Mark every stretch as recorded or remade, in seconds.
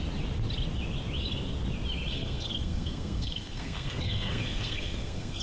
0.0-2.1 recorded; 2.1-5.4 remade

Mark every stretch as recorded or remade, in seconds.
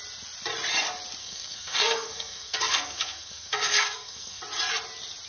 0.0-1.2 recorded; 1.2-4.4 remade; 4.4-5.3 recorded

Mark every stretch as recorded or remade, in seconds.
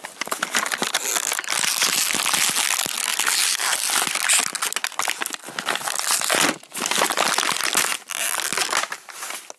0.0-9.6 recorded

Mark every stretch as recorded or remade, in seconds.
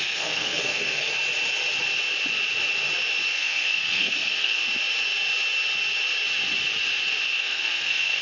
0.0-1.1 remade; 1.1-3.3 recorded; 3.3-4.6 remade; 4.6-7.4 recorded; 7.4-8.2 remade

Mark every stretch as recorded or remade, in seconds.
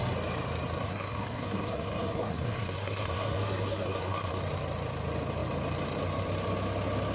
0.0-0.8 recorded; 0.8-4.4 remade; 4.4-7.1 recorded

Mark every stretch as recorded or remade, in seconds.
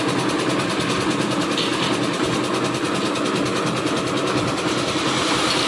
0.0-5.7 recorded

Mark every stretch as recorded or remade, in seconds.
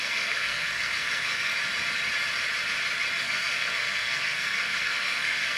0.0-1.5 remade; 1.5-3.2 recorded; 3.2-5.6 remade